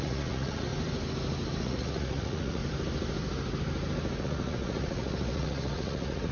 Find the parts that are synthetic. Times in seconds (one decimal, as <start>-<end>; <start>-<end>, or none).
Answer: 0.0-0.7; 1.6-2.6; 4.2-6.3